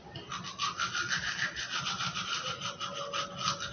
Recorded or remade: recorded